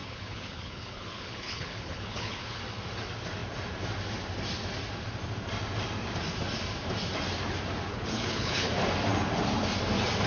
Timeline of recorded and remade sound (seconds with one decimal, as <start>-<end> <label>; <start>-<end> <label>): 0.0-2.6 remade; 2.6-7.9 recorded; 7.9-8.7 remade; 8.7-10.3 recorded